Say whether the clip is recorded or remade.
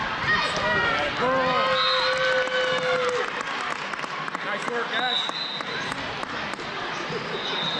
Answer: recorded